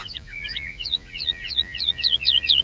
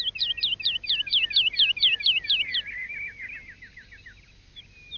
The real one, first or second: second